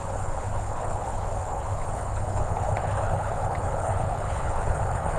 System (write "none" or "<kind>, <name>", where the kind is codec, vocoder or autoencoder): codec, HILCodec